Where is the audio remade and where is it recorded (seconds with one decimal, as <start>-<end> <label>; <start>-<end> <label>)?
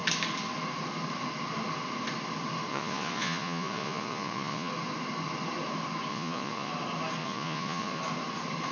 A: 0.0-2.7 recorded; 2.7-4.7 remade; 4.7-6.1 recorded; 6.1-6.7 remade; 6.7-7.2 recorded; 7.2-8.0 remade; 8.0-8.7 recorded